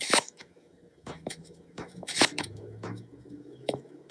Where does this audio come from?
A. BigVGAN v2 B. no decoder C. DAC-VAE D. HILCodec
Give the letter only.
C